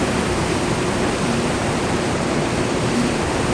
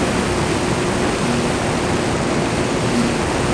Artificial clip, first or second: first